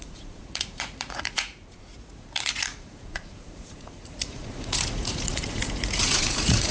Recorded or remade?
remade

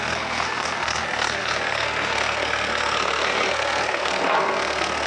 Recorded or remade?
remade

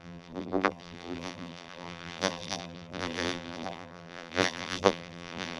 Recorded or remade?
remade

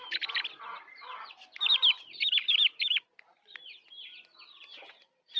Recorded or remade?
remade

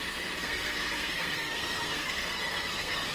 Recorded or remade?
remade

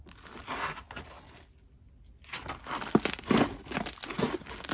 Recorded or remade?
recorded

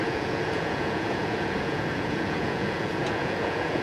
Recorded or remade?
remade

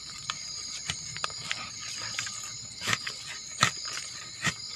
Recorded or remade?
remade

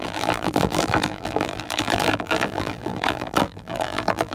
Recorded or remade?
remade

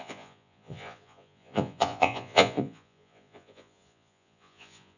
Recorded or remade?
remade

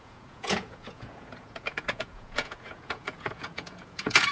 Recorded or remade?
remade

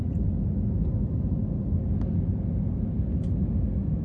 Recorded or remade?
recorded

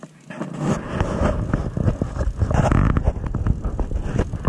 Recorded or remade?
recorded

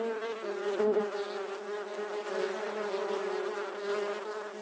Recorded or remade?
recorded